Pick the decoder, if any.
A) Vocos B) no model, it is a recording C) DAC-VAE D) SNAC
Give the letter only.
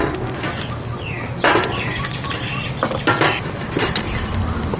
B